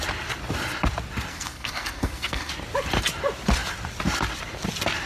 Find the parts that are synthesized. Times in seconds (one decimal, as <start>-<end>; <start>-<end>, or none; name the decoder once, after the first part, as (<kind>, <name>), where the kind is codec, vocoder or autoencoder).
1.3-2.5 (codec, SNAC)